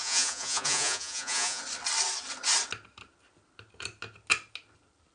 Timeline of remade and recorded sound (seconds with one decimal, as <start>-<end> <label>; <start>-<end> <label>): 0.0-1.6 remade; 1.6-5.1 recorded